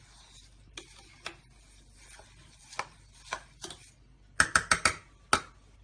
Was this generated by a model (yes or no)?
no